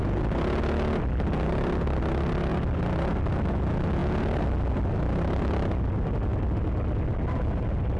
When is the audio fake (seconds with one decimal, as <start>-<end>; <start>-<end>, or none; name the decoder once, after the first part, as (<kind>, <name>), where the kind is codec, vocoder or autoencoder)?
none